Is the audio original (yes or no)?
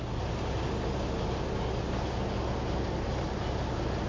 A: yes